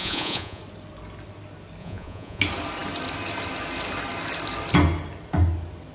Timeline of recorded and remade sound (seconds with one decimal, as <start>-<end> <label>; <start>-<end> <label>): 0.0-0.6 remade; 0.6-1.8 recorded; 1.8-2.4 remade; 2.4-5.9 recorded